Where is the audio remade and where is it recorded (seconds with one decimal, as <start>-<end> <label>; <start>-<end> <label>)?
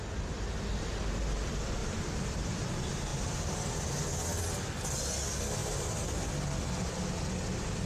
0.0-1.8 recorded; 1.8-2.7 remade; 2.7-3.1 recorded; 3.1-4.0 remade; 4.0-5.6 recorded; 5.6-6.3 remade; 6.3-7.9 recorded